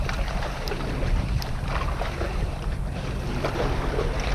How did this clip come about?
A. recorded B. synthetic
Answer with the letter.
A